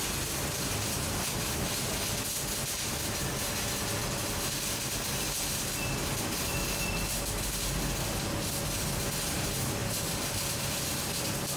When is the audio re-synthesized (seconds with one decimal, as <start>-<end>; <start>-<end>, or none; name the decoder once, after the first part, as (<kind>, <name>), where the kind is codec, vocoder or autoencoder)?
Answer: 0.4-1.7 (vocoder, BigVGAN v2); 9.8-11.0